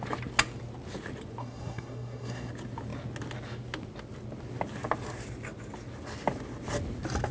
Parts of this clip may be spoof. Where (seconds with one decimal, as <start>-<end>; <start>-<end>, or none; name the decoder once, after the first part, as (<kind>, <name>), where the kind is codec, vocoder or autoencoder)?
1.4-2.5 (codec, SNAC)